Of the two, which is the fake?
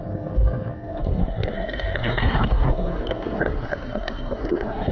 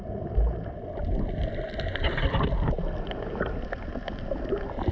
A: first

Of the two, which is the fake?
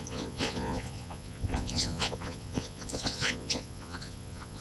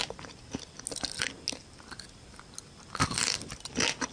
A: first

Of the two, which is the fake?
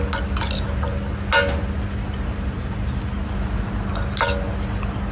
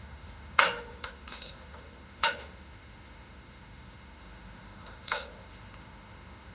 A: second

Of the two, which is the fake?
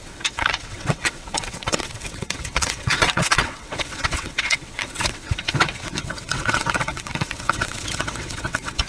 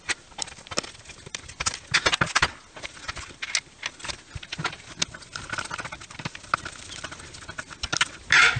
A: first